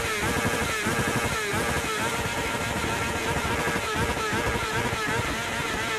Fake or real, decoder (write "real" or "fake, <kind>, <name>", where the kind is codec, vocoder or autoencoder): real